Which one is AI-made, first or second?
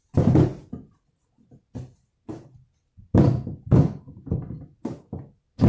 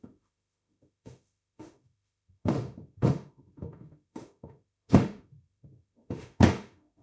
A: second